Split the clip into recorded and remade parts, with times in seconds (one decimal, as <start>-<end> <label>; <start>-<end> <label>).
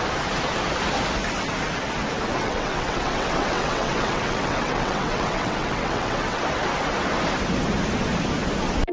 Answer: 0.0-2.3 recorded; 2.3-6.4 remade; 6.4-8.9 recorded